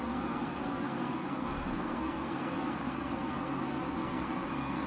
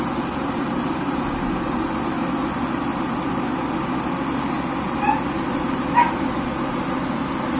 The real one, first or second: second